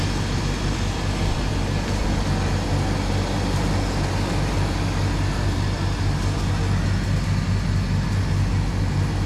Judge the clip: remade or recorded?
recorded